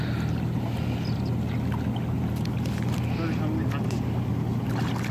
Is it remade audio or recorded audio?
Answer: recorded